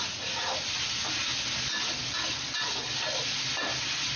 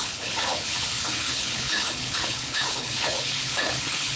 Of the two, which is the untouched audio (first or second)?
first